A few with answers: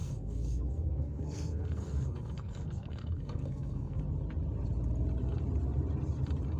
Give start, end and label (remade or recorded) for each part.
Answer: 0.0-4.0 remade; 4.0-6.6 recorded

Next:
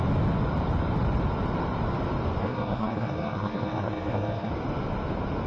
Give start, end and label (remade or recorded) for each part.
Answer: 0.0-2.4 recorded; 2.4-4.5 remade; 4.5-5.5 recorded

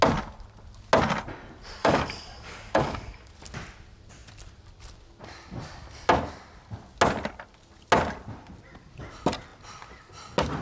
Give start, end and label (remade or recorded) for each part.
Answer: 0.0-1.8 recorded; 1.8-3.3 remade; 3.3-10.6 recorded